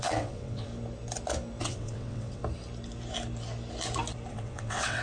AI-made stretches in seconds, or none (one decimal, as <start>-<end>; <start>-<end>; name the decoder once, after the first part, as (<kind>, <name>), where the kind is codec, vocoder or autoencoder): 0.0-0.7 (vocoder, WaveNeXt); 1.6-2.4; 4.3-5.0

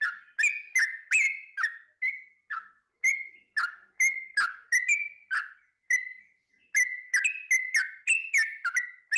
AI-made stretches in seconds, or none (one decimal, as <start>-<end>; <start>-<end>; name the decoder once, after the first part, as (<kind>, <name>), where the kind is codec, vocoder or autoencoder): none

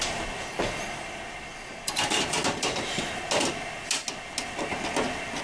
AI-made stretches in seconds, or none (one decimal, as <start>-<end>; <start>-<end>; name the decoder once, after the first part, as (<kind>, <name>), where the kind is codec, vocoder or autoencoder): none

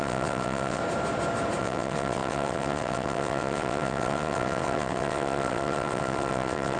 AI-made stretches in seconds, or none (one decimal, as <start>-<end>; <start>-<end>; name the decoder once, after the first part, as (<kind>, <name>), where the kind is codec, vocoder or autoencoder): 0.0-0.8 (vocoder, WaveNeXt); 1.6-6.8

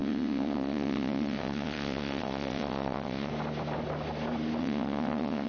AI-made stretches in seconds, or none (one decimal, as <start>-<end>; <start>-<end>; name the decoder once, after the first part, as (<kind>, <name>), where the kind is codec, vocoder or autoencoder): 0.0-3.3 (vocoder, WaveNeXt); 4.6-5.5

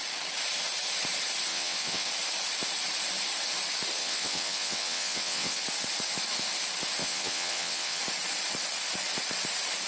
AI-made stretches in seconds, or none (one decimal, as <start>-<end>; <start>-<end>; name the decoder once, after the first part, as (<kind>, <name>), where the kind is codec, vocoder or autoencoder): 1.5-2.1 (vocoder, WaveNeXt); 4.0-5.6; 7.0-8.0

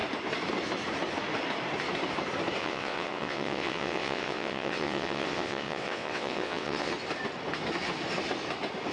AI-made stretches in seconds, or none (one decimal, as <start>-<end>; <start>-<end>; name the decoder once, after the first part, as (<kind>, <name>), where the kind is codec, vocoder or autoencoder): 2.6-6.9 (vocoder, WaveNeXt)

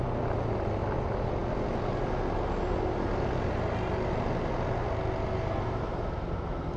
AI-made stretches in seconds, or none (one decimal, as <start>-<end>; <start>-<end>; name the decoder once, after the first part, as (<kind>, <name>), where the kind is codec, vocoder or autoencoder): none